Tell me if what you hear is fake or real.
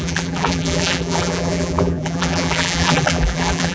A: fake